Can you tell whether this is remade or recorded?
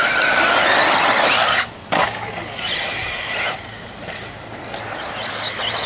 recorded